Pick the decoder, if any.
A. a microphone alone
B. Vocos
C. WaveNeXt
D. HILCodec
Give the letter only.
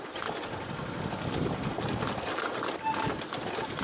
A